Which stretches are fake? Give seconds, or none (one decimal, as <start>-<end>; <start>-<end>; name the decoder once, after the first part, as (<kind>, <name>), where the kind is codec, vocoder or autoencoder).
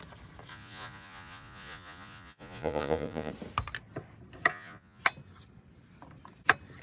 0.5-3.3 (vocoder, Vocos); 4.5-5.0